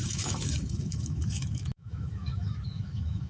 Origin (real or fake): fake